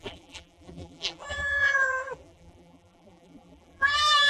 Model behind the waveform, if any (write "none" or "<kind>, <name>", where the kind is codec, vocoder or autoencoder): vocoder, BigVGAN v2